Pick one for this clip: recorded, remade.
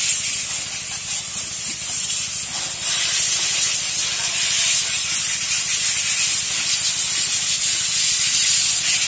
recorded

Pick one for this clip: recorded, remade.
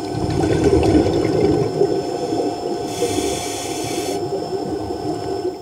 recorded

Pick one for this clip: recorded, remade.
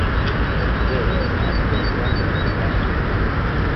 recorded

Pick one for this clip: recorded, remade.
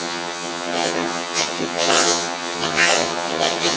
remade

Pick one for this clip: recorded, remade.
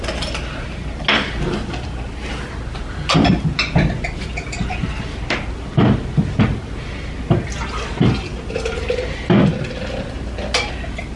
recorded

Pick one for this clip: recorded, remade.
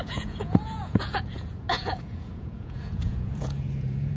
remade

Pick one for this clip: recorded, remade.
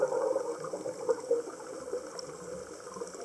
recorded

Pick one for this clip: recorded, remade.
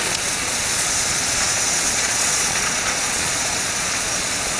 remade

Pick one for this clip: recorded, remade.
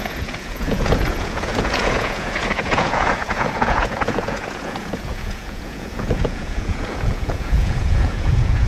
remade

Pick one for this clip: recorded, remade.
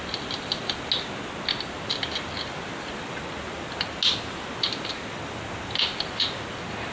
recorded